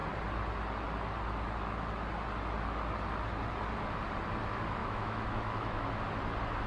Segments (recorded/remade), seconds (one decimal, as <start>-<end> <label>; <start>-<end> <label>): 0.0-4.8 recorded; 4.8-6.0 remade; 6.0-6.7 recorded